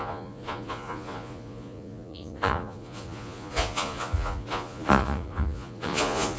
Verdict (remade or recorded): remade